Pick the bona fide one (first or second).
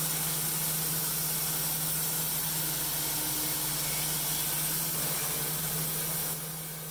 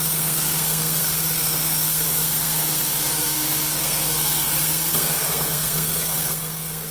first